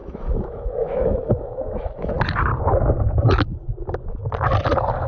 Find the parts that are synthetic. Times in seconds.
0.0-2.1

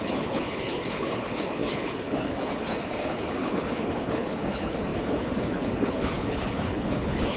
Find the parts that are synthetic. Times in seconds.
0.0-7.4

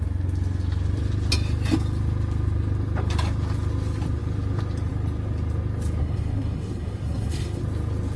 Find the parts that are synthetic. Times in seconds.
6.0-7.6

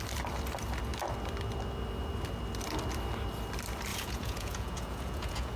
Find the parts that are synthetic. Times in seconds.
3.9-5.6